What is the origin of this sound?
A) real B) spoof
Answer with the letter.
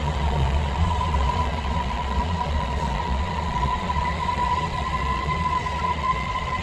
B